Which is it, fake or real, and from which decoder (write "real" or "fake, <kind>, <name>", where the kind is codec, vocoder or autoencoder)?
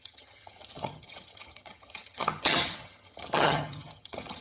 fake, vocoder, HiFi-GAN